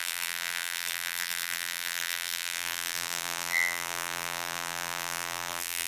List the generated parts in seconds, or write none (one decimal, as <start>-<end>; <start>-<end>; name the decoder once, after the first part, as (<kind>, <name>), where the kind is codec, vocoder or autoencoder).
0.0-5.9 (vocoder, BigVGAN v2)